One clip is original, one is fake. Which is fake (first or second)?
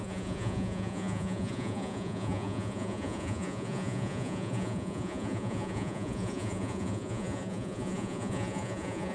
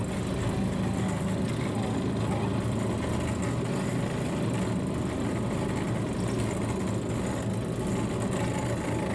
first